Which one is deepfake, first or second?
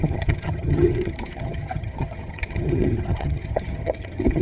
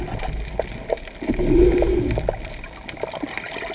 first